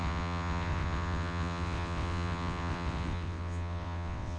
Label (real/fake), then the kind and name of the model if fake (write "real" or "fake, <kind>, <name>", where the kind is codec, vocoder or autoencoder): fake, vocoder, WaveNeXt